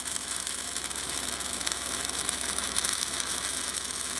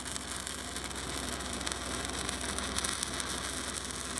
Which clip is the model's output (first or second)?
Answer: first